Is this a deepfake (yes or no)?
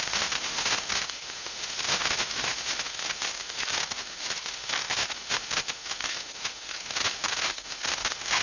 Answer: yes